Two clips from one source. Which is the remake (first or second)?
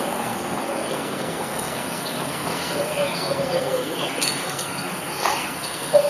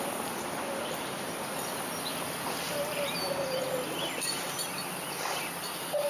first